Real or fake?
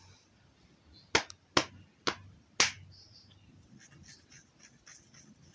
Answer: real